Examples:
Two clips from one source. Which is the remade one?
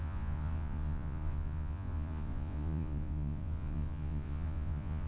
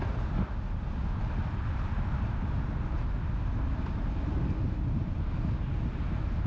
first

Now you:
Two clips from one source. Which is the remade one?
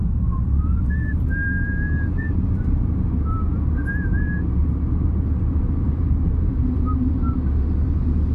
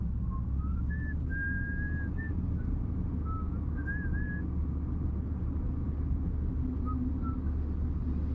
first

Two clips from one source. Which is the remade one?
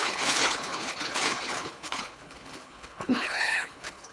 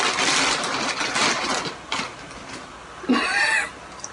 first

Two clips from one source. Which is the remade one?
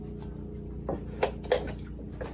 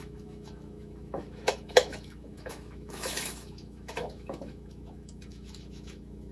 second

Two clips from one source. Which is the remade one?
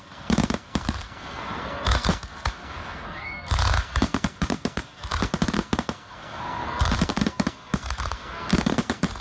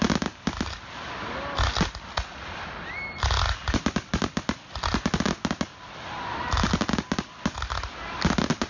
first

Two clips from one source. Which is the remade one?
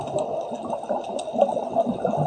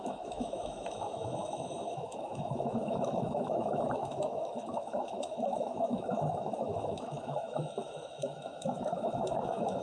second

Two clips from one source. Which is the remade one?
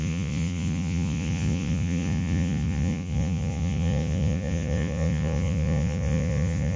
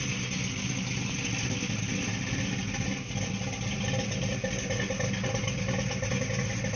first